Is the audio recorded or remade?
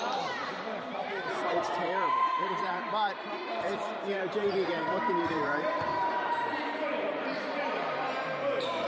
remade